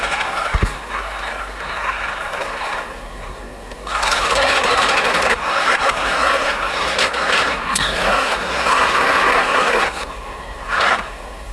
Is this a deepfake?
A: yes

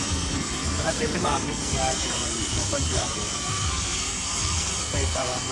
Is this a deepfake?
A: yes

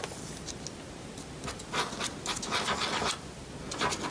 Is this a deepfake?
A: no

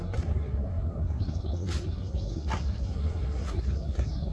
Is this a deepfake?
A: yes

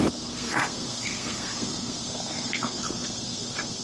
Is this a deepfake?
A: yes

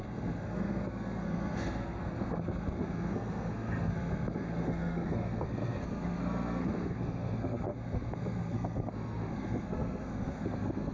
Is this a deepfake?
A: yes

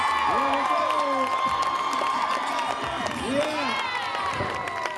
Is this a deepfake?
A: no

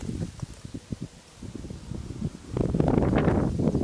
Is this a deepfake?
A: no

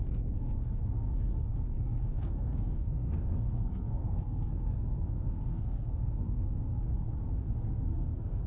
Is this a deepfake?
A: yes